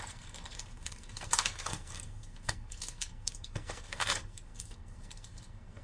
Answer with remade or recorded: remade